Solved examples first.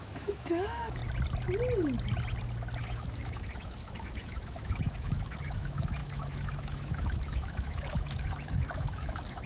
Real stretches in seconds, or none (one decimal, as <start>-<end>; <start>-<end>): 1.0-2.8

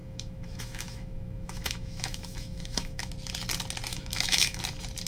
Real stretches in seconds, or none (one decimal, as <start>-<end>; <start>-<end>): 3.1-3.9; 4.6-5.1

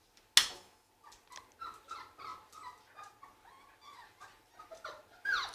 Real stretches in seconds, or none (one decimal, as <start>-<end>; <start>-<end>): 0.0-0.4; 0.9-5.5